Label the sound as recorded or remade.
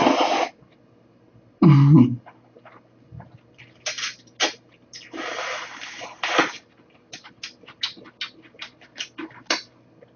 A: recorded